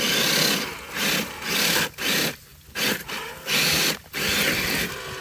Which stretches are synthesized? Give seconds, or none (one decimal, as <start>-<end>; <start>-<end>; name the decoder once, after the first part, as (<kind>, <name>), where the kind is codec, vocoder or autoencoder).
none